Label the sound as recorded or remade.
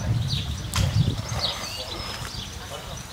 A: recorded